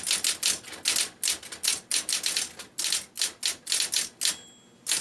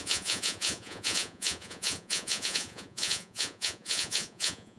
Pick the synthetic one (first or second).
second